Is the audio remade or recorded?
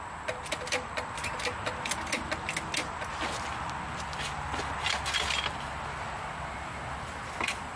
recorded